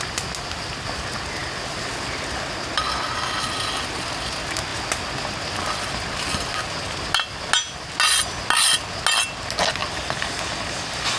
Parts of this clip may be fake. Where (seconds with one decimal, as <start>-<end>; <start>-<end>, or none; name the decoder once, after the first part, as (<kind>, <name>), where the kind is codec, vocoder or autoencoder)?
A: 9.8-10.3 (vocoder, BigVGAN v2)